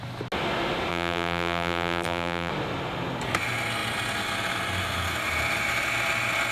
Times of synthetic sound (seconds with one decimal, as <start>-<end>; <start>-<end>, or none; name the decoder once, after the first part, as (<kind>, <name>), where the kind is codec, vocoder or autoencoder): 0.9-2.5 (vocoder, BigVGAN v2)